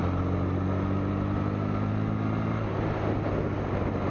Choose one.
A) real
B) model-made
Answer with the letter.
A